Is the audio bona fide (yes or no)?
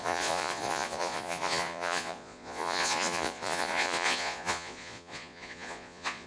no